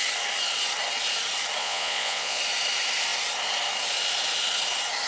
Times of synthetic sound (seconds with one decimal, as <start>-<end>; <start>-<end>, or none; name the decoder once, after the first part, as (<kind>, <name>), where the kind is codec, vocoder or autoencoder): 1.6-2.4 (vocoder, Vocos)